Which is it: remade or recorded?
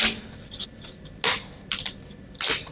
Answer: recorded